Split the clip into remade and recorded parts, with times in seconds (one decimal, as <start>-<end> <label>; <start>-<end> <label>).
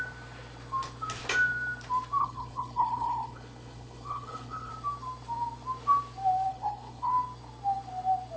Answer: 0.0-2.2 recorded; 2.2-4.7 remade; 4.7-6.5 recorded; 6.5-7.1 remade; 7.1-8.4 recorded